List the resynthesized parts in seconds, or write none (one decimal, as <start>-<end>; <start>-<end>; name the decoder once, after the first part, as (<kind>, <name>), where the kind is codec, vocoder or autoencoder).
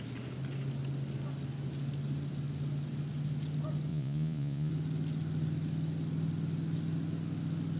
3.9-4.7 (vocoder, Vocos)